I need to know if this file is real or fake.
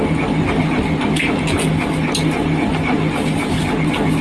real